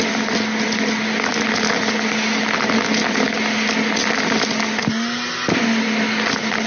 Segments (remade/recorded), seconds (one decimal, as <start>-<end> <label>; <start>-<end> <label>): 0.0-6.7 recorded